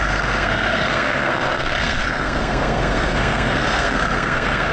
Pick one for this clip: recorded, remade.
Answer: remade